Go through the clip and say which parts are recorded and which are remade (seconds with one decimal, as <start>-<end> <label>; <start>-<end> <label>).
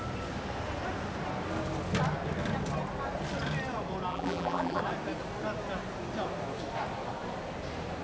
0.0-4.1 recorded; 4.1-4.8 remade; 4.8-8.0 recorded